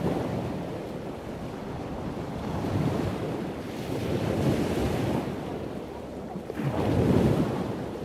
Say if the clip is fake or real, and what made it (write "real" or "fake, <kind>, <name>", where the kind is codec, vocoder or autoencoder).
fake, vocoder, BigVGAN v2